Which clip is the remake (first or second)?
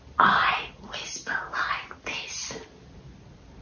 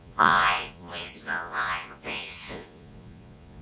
second